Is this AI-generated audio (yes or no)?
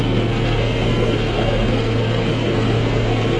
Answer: yes